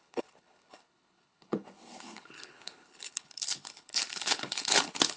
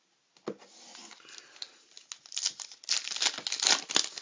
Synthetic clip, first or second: first